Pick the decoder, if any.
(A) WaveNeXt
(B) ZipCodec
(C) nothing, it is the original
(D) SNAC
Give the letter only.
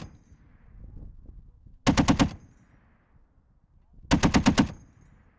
C